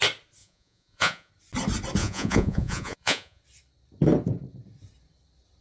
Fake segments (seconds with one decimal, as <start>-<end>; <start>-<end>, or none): 0.4-1.3; 2.0-3.4